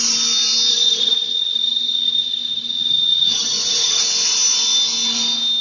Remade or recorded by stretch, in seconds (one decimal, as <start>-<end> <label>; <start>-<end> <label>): 0.0-0.7 recorded; 0.7-4.0 remade; 4.0-5.6 recorded